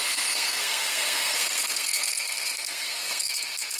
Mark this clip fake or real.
fake